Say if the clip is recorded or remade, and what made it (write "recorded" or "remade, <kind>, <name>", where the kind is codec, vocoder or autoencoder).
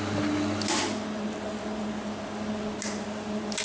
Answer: recorded